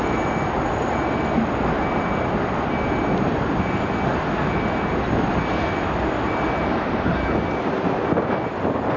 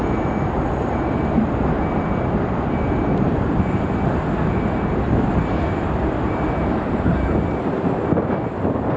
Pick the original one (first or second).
first